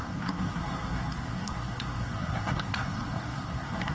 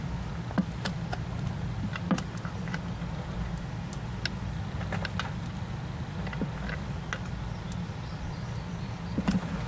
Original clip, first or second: second